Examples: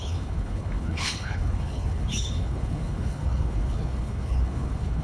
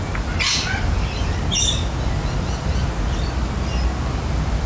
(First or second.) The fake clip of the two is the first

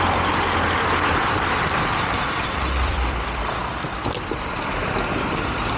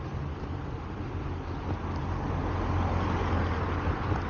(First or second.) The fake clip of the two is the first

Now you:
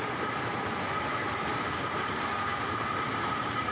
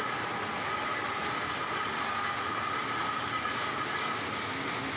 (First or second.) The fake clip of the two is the first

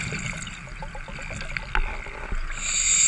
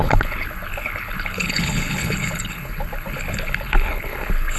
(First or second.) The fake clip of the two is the second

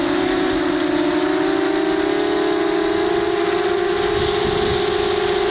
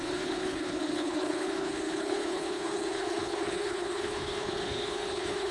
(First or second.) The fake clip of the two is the second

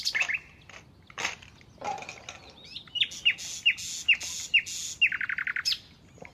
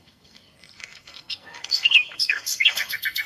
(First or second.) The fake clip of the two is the second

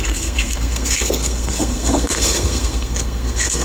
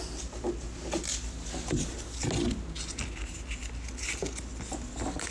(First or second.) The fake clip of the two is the first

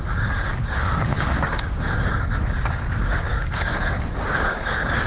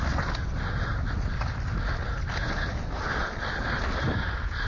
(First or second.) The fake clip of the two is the first